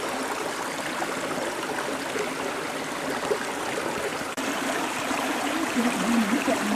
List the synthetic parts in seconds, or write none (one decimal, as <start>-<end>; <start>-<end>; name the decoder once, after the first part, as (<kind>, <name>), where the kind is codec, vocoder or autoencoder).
4.1-6.8 (vocoder, BigVGAN v2)